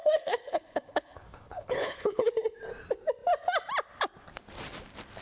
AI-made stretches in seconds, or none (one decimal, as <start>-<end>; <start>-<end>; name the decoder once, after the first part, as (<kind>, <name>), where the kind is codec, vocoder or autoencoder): 0.0-2.3 (codec, HILCodec)